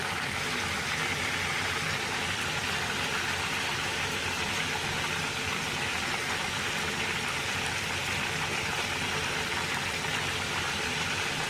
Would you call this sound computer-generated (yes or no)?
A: yes